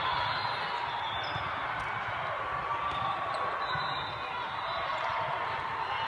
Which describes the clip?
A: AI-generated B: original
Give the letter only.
B